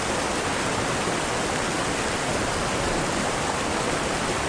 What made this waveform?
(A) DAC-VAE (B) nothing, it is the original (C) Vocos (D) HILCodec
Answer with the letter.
B